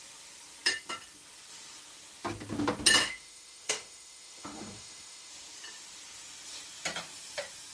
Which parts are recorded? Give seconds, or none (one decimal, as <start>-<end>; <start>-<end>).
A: 0.0-3.0; 5.3-7.7